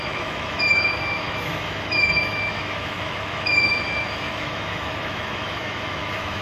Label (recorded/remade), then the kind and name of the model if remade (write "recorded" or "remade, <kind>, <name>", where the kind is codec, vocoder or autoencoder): remade, autoencoder, DAC-VAE